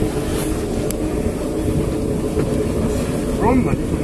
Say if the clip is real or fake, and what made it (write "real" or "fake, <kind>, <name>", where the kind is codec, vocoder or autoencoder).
real